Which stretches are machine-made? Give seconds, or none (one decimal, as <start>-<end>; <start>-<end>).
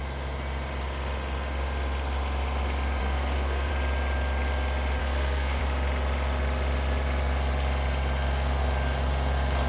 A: 3.0-3.7; 5.0-5.6